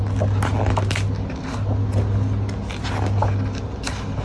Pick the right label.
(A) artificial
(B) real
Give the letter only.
B